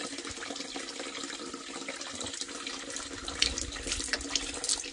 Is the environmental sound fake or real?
real